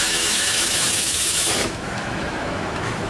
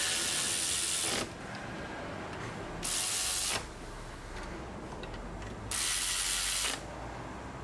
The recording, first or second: second